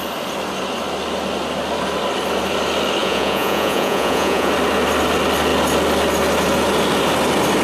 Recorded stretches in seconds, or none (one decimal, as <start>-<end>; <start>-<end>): 0.0-3.0; 4.5-7.6